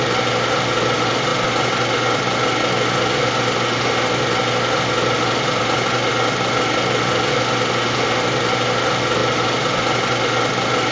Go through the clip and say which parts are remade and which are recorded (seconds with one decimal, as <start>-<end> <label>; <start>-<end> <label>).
0.0-9.2 recorded; 9.2-9.8 remade; 9.8-10.9 recorded